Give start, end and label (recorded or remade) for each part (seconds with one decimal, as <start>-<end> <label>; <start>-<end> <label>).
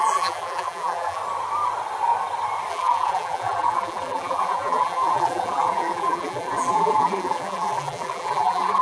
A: 0.0-1.2 remade; 1.2-2.7 recorded; 2.7-8.8 remade